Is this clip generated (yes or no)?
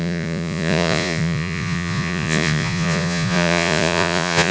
yes